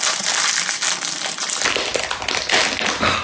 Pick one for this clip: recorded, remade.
recorded